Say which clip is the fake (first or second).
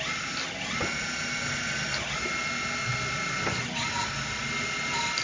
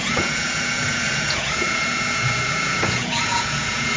second